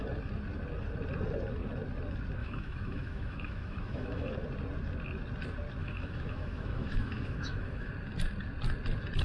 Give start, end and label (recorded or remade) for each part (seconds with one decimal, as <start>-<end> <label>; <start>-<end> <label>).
0.0-2.4 recorded; 2.4-4.3 remade; 4.3-5.8 recorded; 5.8-7.9 remade; 7.9-9.2 recorded

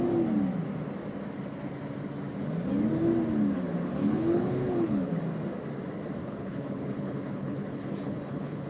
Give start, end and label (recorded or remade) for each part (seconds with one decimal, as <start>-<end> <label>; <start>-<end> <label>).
0.0-4.0 recorded; 4.0-5.2 remade; 5.2-6.2 recorded; 6.2-8.7 remade

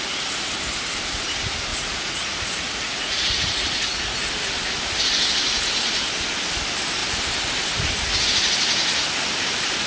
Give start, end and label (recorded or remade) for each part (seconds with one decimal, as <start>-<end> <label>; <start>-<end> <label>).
0.0-1.7 recorded; 1.7-4.3 remade; 4.3-9.9 recorded

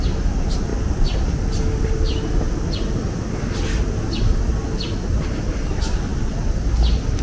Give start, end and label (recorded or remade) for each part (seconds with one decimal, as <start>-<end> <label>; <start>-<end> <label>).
0.0-7.2 recorded

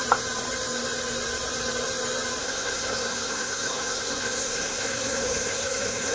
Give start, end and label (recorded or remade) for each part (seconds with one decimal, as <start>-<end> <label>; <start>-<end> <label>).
0.0-2.4 recorded; 2.4-6.1 remade

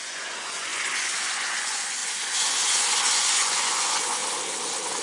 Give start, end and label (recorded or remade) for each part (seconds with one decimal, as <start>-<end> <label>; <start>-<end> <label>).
0.0-4.2 remade; 4.2-5.0 recorded

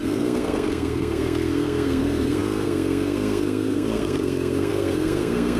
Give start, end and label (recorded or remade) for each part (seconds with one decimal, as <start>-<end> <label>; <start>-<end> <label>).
0.0-5.6 remade

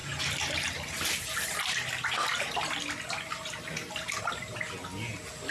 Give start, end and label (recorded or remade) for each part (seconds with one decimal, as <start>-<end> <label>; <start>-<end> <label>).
0.0-5.5 recorded